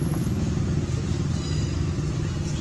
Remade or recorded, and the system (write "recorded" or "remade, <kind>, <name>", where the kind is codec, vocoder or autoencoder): recorded